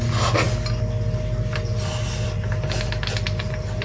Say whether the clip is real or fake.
real